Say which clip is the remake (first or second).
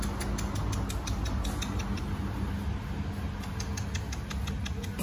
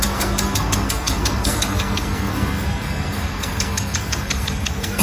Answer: second